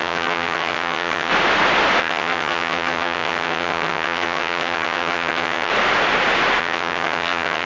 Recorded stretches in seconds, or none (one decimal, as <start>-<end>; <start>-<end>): 1.3-2.0; 5.7-6.6